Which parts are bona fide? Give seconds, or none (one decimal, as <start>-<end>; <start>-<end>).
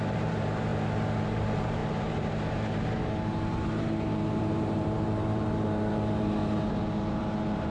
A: 0.7-1.2; 6.4-6.9